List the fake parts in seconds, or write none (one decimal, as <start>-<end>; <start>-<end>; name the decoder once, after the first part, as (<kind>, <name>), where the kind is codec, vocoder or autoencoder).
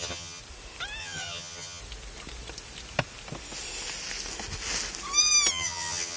0.0-0.4 (vocoder, HiFi-GAN); 1.0-1.8; 5.5-6.2